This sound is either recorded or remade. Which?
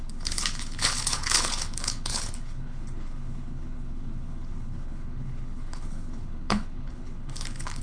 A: remade